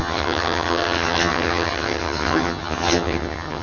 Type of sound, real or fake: fake